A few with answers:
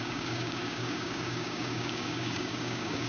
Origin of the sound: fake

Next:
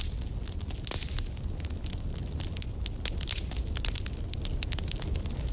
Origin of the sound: real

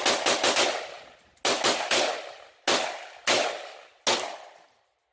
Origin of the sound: real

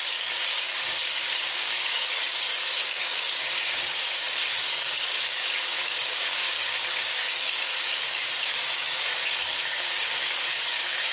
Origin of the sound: fake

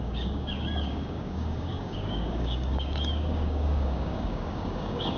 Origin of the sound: fake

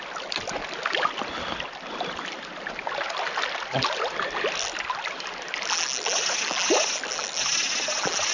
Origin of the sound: real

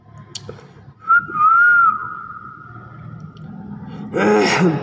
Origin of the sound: real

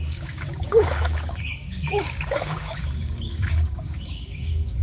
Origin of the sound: fake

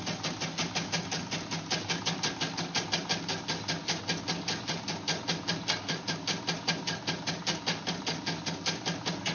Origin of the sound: real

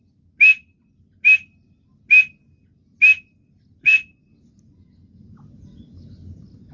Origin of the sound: real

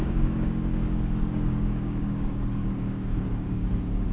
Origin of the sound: fake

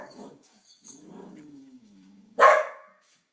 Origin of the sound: fake